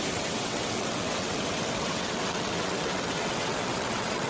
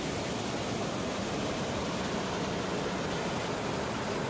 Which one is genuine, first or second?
second